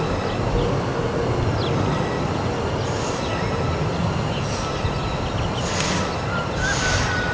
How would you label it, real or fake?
real